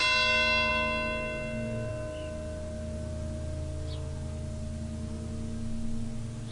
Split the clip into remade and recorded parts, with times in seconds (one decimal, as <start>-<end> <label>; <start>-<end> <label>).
0.0-6.5 recorded